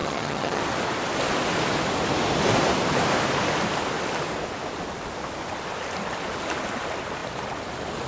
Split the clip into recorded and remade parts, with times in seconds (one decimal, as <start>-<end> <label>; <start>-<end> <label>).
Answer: 0.0-0.6 remade; 0.6-8.1 recorded